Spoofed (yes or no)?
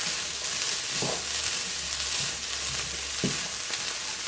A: no